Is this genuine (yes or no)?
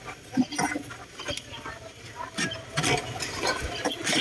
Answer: yes